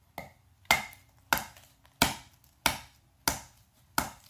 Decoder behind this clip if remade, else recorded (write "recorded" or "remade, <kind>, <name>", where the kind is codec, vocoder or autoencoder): recorded